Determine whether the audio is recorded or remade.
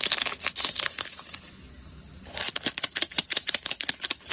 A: recorded